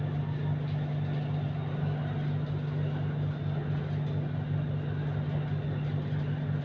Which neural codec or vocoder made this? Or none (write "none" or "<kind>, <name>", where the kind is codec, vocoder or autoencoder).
none